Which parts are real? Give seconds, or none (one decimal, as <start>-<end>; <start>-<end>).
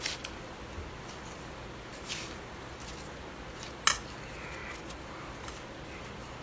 0.0-6.4